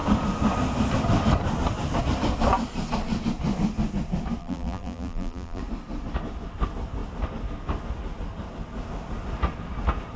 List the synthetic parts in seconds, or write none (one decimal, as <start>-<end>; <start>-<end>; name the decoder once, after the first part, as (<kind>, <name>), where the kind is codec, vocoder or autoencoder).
4.4-5.6 (vocoder, BigVGAN v2)